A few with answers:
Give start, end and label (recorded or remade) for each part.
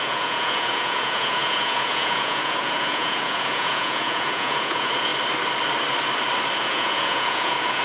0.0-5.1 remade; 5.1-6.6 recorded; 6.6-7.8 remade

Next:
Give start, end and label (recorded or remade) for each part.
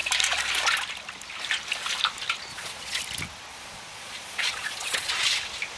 0.0-2.5 recorded; 2.5-3.0 remade; 3.0-3.5 recorded; 3.5-5.1 remade; 5.1-5.8 recorded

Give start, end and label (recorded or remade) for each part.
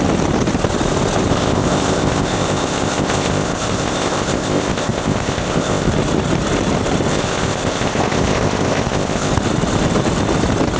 0.0-1.3 recorded; 1.3-5.9 remade; 5.9-7.1 recorded; 7.1-9.3 remade; 9.3-10.8 recorded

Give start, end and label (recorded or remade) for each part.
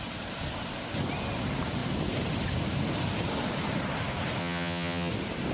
0.0-4.4 recorded; 4.4-5.1 remade; 5.1-5.5 recorded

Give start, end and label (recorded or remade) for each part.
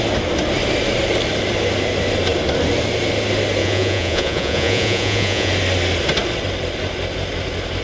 0.0-3.6 recorded; 3.6-5.5 remade; 5.5-7.8 recorded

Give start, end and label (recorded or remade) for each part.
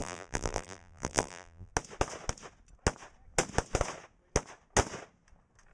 0.0-1.7 remade; 1.7-5.7 recorded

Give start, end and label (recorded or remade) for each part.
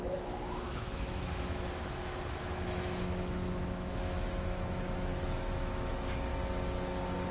0.0-6.3 remade; 6.3-7.3 recorded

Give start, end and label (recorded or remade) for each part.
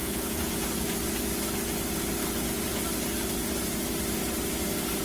0.0-0.5 remade; 0.5-5.0 recorded